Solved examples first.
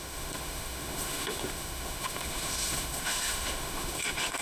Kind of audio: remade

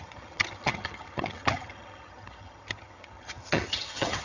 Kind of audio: remade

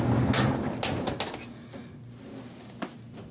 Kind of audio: recorded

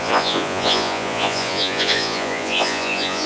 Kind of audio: remade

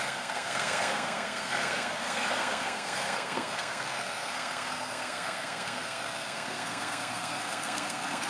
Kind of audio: remade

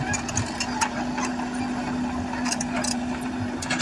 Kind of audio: recorded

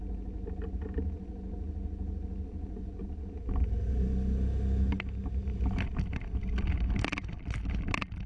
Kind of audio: recorded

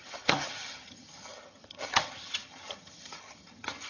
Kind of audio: remade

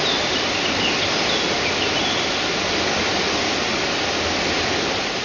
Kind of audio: recorded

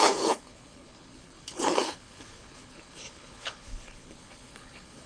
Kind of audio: remade